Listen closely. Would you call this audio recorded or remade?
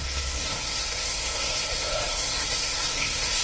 remade